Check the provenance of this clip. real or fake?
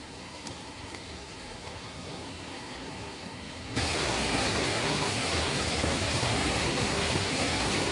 fake